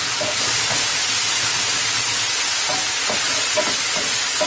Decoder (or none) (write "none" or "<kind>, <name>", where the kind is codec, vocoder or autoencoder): none